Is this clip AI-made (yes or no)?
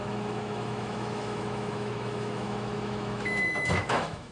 yes